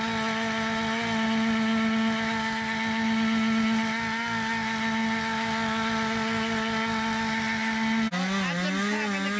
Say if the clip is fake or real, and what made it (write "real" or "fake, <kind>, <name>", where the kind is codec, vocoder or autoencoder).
real